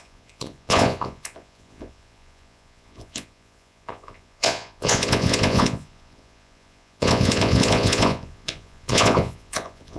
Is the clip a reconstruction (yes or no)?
yes